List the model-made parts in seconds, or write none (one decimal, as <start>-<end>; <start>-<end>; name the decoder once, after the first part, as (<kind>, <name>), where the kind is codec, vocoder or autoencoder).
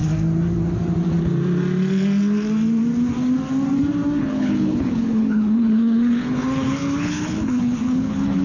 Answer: 4.2-8.4 (codec, HILCodec)